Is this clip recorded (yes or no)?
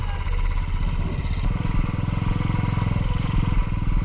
yes